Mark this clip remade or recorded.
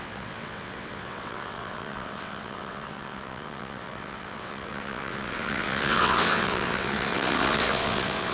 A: remade